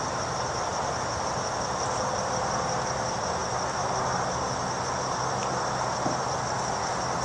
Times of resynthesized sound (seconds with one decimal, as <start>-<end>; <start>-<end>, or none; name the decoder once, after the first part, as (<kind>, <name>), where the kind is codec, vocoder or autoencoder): none